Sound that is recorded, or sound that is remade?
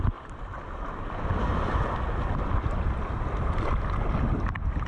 recorded